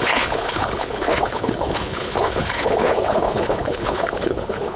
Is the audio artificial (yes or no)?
yes